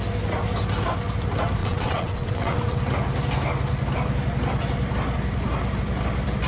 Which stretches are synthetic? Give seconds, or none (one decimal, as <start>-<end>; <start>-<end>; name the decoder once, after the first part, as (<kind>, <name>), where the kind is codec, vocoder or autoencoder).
1.6-2.8 (vocoder, WaveNeXt)